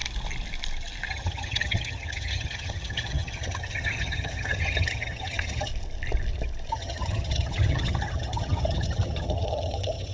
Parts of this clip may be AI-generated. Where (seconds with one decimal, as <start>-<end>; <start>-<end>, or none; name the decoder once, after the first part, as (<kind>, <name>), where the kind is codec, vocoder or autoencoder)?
1.1-5.7 (vocoder, HiFi-GAN); 6.7-10.1